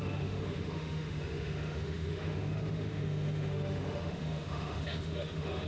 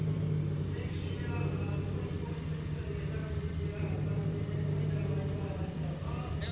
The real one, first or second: second